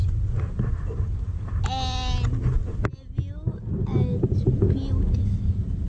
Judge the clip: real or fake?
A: real